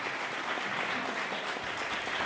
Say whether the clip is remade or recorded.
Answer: recorded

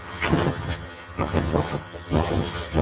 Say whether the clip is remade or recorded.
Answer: remade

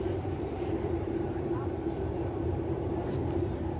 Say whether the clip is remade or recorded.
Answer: remade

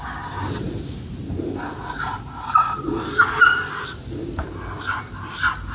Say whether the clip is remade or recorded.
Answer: remade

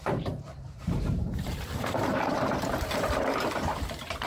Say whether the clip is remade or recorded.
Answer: remade